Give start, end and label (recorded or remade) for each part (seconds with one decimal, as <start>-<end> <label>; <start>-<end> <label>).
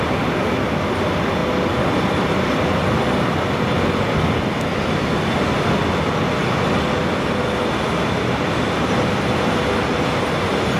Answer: 0.0-10.8 recorded